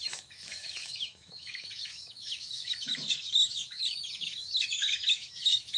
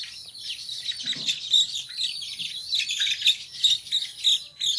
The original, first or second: second